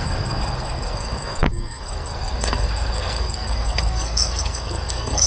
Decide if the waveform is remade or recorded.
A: remade